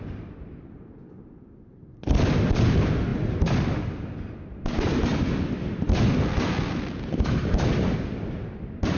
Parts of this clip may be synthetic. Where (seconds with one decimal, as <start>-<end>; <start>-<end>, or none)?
none